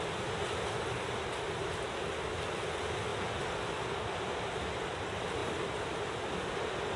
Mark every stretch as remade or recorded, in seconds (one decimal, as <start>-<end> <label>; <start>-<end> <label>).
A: 0.0-7.0 recorded